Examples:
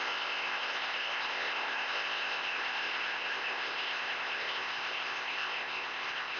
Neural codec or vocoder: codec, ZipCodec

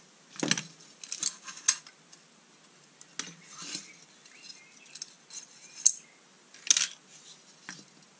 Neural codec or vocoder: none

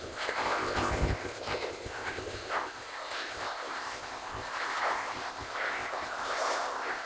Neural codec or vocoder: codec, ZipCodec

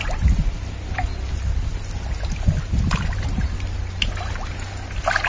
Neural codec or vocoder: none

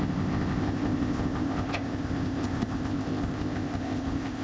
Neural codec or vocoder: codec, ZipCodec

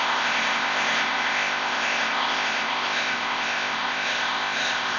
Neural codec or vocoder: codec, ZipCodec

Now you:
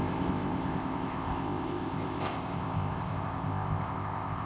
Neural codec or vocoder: codec, ZipCodec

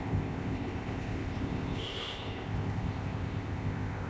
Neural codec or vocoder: codec, ZipCodec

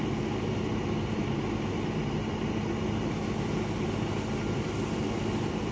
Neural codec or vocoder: none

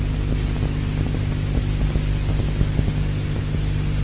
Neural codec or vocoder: none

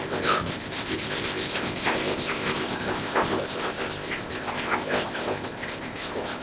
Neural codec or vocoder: codec, ZipCodec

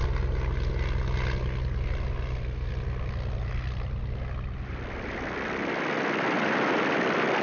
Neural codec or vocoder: none